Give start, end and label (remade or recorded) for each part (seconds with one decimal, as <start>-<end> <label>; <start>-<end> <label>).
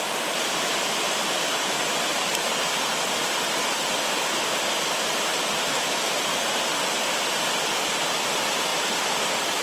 0.0-5.3 recorded; 5.3-7.3 remade; 7.3-9.6 recorded